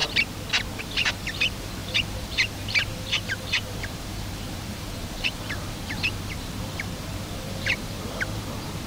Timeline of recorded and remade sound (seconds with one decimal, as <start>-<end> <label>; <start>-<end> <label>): 0.0-0.8 recorded; 0.8-8.9 remade